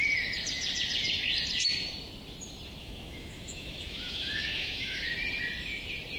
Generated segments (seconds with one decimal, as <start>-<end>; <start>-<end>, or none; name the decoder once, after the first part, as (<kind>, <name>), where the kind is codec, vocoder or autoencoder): 2.8-5.0 (autoencoder, DAC-VAE)